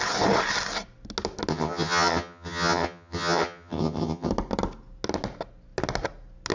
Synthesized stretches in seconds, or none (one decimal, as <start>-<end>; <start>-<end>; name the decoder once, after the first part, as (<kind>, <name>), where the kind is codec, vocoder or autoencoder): 1.5-4.3 (vocoder, HiFi-GAN)